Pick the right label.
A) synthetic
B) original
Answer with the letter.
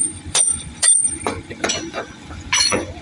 A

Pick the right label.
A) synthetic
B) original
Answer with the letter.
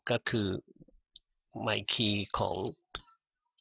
B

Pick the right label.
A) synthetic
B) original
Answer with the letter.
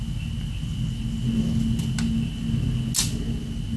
B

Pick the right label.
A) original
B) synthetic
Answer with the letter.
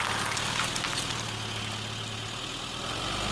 A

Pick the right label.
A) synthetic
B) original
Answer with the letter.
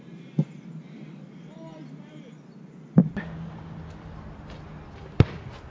B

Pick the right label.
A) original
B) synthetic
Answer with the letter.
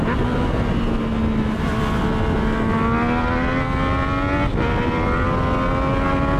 A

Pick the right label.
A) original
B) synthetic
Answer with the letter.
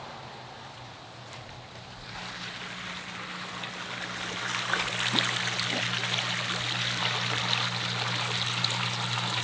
A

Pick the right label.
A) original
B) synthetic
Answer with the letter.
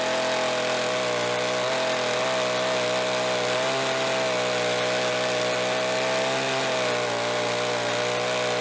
A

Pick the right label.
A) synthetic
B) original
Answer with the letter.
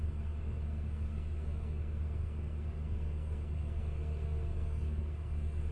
A